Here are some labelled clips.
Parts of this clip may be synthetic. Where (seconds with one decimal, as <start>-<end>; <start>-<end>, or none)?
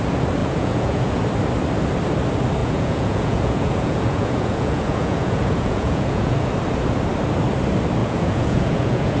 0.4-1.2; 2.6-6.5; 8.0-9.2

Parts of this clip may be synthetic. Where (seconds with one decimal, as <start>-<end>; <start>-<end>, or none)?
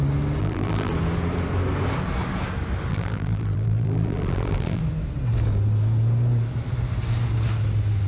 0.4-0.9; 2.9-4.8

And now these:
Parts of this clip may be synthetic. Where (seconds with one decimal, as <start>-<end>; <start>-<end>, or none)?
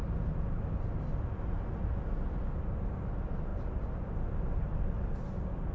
none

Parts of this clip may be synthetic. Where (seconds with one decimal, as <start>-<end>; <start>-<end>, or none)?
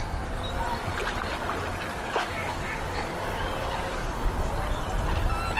1.9-4.5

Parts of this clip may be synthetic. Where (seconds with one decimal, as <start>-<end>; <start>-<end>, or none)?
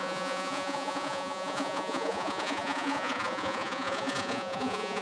0.0-5.0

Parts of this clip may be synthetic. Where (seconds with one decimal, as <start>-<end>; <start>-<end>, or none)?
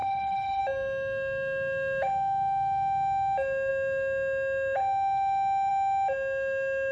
0.0-0.6